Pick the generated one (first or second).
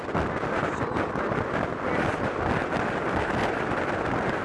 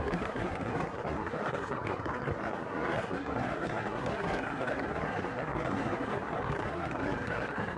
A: second